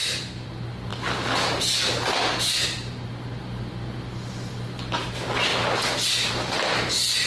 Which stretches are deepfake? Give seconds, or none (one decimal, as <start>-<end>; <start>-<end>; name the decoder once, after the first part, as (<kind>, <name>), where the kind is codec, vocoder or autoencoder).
0.0-0.5 (vocoder, BigVGAN v2)